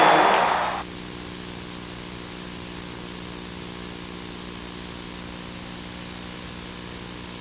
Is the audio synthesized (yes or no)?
no